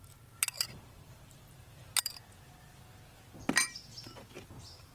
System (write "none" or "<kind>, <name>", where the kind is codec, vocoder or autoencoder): none